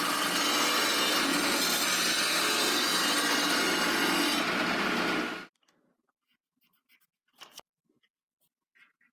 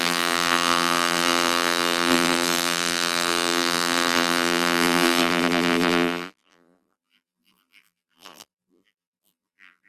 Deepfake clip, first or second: second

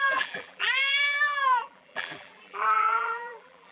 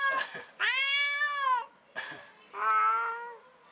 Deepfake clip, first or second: first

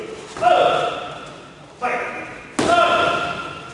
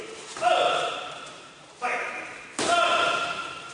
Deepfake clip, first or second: second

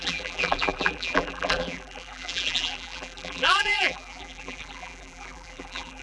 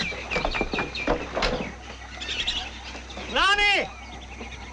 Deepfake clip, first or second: first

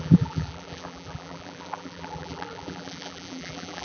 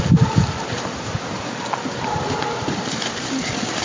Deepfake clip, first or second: first